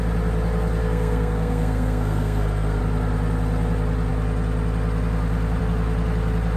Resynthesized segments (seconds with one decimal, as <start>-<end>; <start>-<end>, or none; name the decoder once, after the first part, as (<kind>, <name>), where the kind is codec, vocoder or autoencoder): 0.8-2.8 (codec, SNAC)